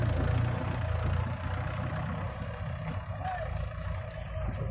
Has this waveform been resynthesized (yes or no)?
no